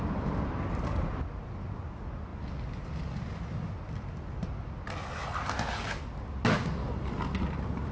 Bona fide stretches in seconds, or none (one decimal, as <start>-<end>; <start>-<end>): 0.0-7.9